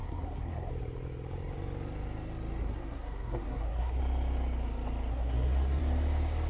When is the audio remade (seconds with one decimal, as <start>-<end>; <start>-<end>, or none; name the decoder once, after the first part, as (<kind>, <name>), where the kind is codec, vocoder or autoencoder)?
0.0-0.7 (codec, SNAC); 2.6-4.0; 5.1-5.8